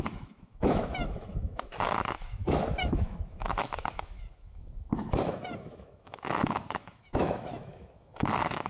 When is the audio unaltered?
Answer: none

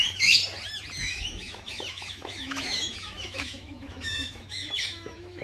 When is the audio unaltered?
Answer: 0.4-1.0

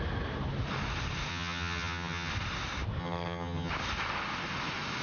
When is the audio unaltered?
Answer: 0.0-1.3; 2.3-3.0; 3.7-5.0

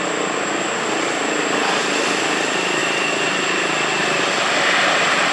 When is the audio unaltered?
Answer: 0.0-5.3

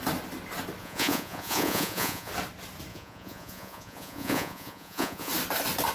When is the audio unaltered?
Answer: 0.0-0.8; 2.3-2.9; 5.3-5.9